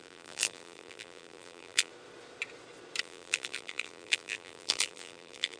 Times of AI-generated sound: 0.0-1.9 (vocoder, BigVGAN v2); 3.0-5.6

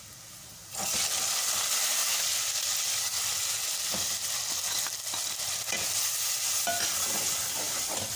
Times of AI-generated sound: none

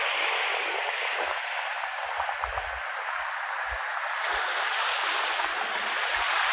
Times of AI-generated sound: none

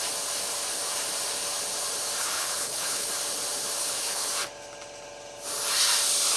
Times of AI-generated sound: 2.2-3.1 (codec, HILCodec); 3.8-4.3